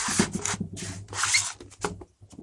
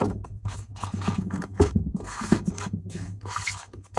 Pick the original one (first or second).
first